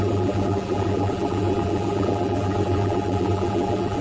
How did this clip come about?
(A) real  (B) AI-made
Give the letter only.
B